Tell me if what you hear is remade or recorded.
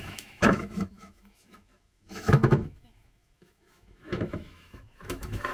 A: remade